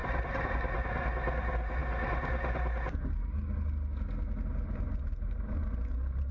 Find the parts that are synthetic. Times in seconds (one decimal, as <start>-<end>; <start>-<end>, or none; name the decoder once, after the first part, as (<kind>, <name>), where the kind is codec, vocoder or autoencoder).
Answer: 0.0-0.6 (vocoder, BigVGAN v2)